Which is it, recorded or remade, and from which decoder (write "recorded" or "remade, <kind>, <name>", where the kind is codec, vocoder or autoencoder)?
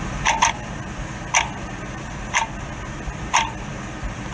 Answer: recorded